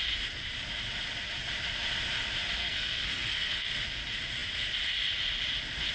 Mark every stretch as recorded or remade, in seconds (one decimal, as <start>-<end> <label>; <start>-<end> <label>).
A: 0.0-2.6 recorded; 2.6-3.7 remade; 3.7-5.9 recorded